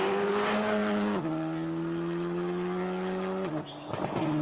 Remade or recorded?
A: recorded